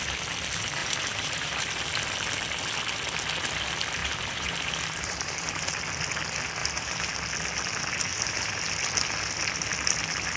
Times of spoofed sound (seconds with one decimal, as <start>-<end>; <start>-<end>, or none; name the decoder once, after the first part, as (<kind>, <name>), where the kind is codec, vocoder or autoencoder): 0.8-1.8 (vocoder, BigVGAN v2); 4.0-5.7; 6.6-7.1; 8.1-8.7